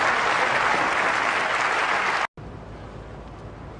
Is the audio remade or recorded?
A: recorded